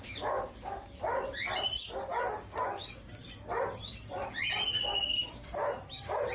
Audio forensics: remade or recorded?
remade